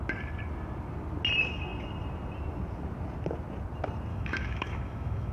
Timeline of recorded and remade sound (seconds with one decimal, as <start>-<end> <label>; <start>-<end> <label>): 0.0-4.1 recorded; 4.1-5.3 remade